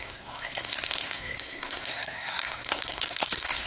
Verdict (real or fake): fake